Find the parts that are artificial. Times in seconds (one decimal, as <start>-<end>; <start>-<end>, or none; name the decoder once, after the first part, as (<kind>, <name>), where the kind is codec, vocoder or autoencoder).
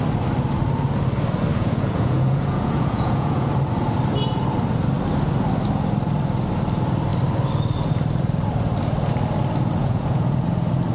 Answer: 1.5-3.5 (vocoder, Vocos); 9.8-10.5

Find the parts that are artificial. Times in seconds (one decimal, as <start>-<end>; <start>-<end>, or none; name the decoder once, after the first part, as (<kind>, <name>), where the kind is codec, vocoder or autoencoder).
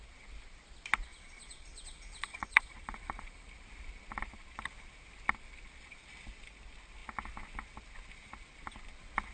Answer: 1.1-3.5 (vocoder, Vocos)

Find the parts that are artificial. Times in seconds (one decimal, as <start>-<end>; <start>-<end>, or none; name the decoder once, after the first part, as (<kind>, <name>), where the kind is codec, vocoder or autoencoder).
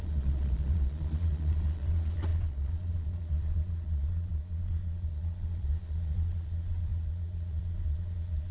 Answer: 0.0-8.5 (vocoder, Vocos)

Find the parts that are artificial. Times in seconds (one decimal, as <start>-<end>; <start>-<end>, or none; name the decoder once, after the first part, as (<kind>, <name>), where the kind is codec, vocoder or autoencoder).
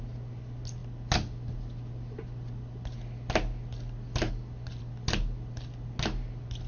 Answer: none